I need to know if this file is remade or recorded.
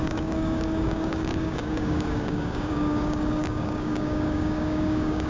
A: remade